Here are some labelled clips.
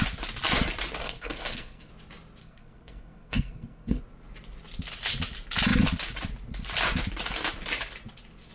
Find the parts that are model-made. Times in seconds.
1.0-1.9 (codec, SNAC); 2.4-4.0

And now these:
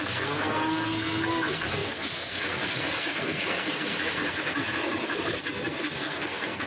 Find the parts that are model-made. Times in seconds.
0.0-6.7 (codec, SNAC)

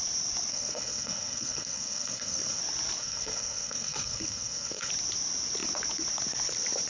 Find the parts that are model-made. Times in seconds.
0.5-2.6 (codec, SNAC); 3.0-4.9